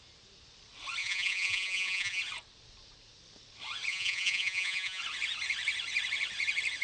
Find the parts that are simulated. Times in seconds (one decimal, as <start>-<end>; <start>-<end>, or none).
1.0-2.2; 3.9-5.0